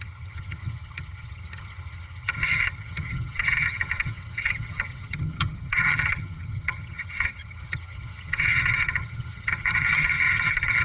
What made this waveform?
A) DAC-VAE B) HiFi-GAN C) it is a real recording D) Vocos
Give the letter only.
B